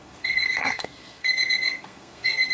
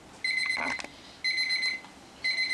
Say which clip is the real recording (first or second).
second